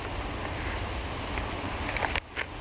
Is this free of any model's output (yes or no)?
yes